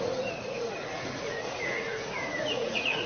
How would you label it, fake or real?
fake